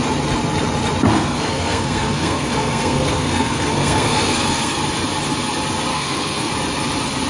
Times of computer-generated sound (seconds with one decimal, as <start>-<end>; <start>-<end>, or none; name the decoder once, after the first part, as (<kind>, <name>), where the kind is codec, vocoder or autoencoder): 1.1-4.8 (codec, SNAC); 5.9-6.5